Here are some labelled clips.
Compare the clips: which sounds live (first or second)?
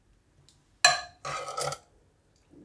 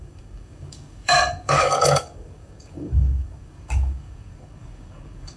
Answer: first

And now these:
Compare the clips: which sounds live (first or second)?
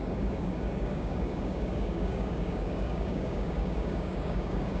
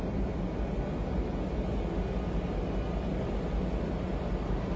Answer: second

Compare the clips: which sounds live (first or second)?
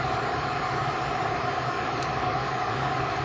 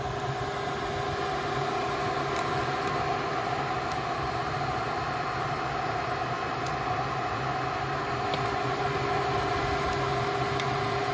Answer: second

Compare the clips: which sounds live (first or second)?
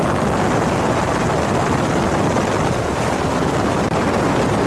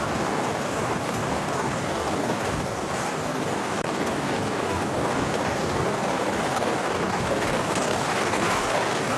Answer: first